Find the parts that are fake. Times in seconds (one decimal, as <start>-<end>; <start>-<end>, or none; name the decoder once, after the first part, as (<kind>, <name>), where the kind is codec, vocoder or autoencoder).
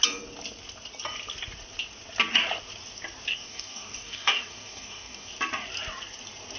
3.3-5.3 (codec, DAC)